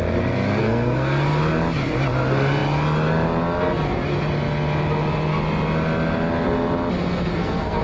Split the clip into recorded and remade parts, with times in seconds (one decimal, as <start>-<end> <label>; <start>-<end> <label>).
0.0-0.6 recorded; 0.6-1.4 remade; 1.4-7.3 recorded; 7.3-7.8 remade